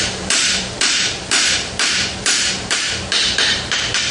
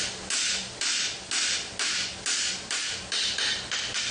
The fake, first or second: first